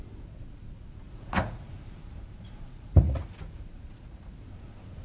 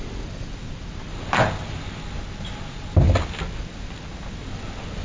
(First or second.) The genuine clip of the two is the second